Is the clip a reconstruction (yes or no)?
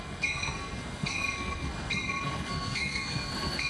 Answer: yes